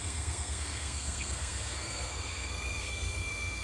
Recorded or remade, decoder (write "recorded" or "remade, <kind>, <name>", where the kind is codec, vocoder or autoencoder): remade, codec, SNAC